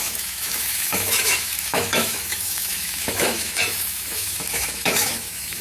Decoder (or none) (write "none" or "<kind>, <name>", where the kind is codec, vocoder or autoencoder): autoencoder, DAC-VAE